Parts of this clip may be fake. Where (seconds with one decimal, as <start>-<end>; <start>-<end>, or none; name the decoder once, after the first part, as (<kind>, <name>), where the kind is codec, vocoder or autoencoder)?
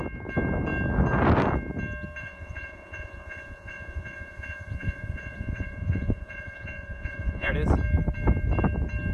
2.2-7.5 (vocoder, Vocos)